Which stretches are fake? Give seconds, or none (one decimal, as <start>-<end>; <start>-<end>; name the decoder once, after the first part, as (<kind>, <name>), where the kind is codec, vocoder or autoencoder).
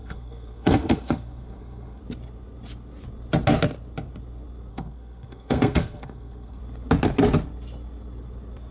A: 0.0-2.0 (codec, SNAC); 4.7-6.6